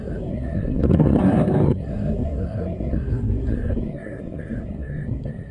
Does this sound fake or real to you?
fake